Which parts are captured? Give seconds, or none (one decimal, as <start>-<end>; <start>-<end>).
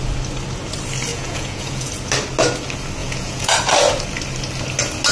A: 0.0-1.1; 1.9-3.0; 3.5-5.1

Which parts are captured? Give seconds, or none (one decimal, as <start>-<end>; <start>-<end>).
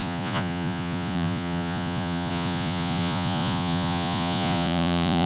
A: none